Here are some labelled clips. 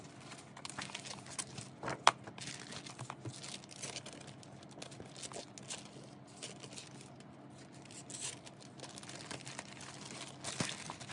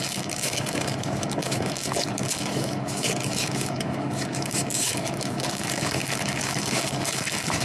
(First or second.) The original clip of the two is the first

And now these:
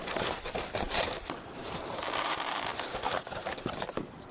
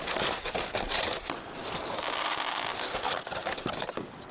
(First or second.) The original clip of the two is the second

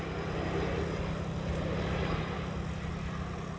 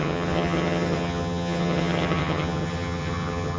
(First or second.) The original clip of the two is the first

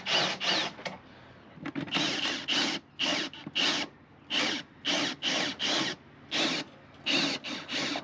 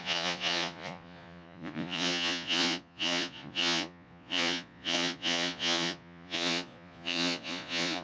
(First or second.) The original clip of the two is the first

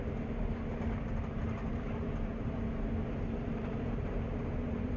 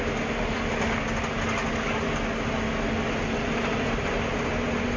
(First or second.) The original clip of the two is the second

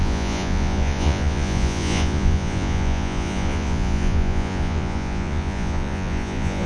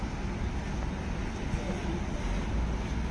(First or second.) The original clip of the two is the second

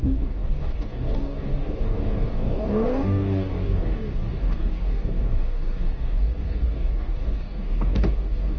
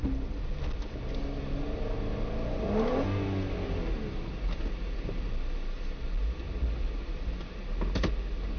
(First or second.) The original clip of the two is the second